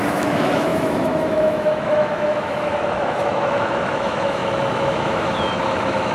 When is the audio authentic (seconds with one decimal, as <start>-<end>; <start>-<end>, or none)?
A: none